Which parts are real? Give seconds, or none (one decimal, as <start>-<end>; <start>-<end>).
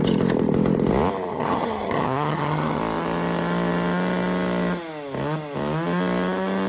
0.0-1.3; 2.8-6.7